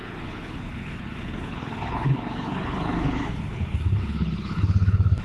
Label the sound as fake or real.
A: fake